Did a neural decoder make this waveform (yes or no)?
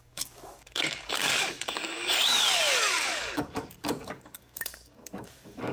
yes